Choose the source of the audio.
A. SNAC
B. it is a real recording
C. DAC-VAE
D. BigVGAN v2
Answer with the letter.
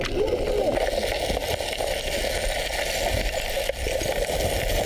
B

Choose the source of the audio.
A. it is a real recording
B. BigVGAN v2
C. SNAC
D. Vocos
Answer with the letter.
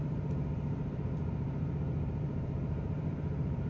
B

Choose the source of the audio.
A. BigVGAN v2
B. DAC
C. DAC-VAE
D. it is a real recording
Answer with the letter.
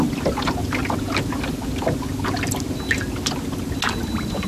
D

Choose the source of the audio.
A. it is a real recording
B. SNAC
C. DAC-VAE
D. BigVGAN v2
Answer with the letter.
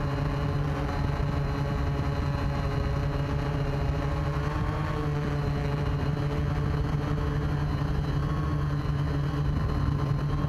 A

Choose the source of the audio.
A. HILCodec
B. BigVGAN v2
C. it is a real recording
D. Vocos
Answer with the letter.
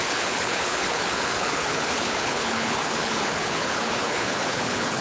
A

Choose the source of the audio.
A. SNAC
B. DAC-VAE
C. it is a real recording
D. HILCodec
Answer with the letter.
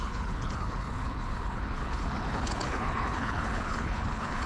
D